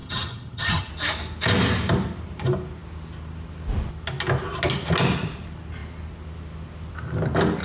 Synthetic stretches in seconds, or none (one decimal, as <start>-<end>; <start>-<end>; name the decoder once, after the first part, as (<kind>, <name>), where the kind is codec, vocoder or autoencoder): 0.0-0.9 (vocoder, HiFi-GAN)